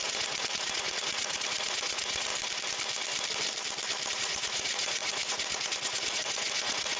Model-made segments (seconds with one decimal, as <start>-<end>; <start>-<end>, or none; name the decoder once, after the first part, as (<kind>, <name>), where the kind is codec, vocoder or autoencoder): 0.0-2.3 (vocoder, Vocos); 4.1-7.0